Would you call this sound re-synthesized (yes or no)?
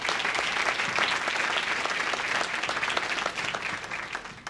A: no